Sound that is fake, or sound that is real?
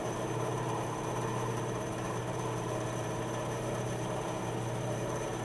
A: fake